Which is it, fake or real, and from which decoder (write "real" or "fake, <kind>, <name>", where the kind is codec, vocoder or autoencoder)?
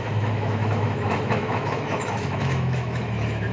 fake, autoencoder, DAC-VAE